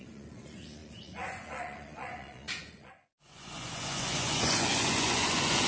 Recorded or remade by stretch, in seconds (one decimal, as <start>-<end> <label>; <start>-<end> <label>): 0.0-5.7 remade